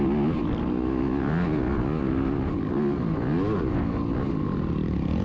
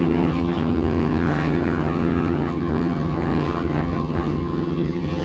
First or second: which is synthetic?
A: second